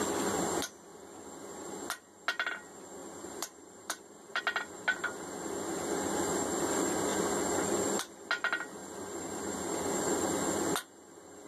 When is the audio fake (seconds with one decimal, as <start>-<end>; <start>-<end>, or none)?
3.0-4.4; 8.8-9.4